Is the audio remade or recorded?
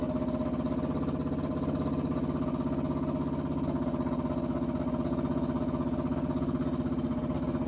recorded